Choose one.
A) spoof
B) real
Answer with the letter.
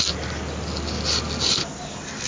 B